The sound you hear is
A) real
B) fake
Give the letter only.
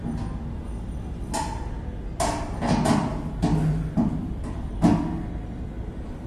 A